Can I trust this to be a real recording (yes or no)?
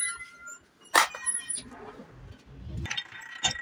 yes